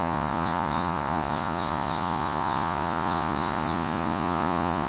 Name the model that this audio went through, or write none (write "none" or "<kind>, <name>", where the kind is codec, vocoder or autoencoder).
vocoder, Vocos